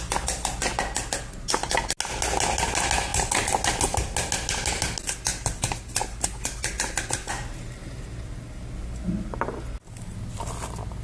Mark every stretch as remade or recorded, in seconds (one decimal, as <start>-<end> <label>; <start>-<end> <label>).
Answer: 0.0-11.0 recorded